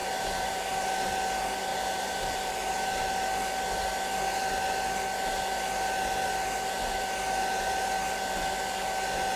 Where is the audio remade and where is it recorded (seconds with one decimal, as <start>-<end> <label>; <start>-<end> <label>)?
0.0-0.7 remade; 0.7-1.7 recorded; 1.7-2.5 remade; 2.5-9.4 recorded